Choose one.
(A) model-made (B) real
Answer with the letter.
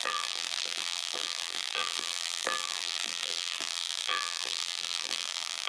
A